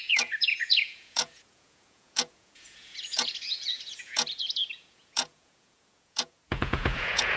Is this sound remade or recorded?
remade